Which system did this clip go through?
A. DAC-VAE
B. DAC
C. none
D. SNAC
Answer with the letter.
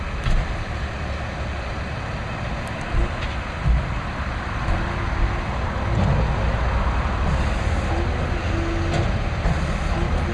C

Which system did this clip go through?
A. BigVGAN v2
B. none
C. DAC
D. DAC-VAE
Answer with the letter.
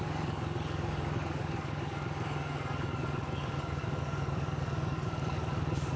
C